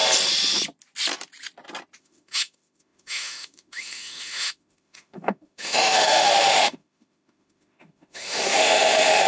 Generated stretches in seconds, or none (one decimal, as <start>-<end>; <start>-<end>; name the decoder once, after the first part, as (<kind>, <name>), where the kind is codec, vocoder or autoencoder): 2.0-9.3 (autoencoder, DAC-VAE)